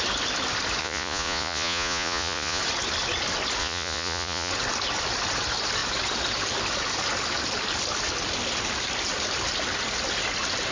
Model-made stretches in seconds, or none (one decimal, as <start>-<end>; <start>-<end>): 0.8-2.6; 3.6-4.5